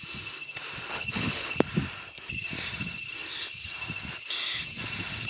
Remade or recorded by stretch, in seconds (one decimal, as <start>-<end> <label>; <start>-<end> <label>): 0.0-0.9 recorded; 0.9-1.6 remade; 1.6-5.3 recorded